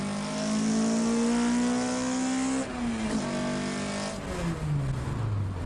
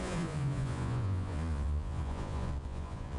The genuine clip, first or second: first